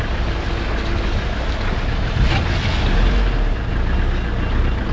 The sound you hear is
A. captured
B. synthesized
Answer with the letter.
A